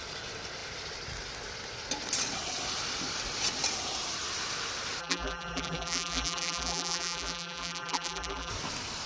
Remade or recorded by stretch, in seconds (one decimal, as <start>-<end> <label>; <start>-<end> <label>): 0.0-5.0 recorded; 5.0-8.5 remade; 8.5-9.1 recorded